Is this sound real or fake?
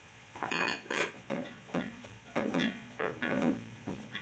fake